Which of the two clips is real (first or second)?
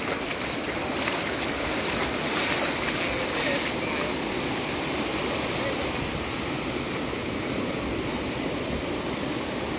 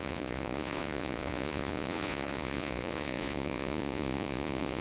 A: first